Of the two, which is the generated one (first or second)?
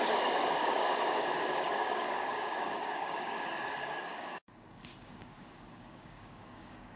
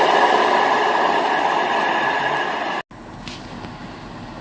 first